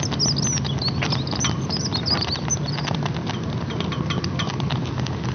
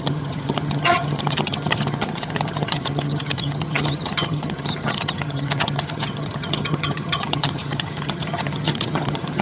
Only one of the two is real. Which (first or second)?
first